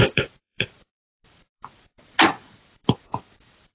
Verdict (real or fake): fake